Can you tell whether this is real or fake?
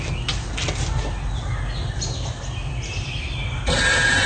real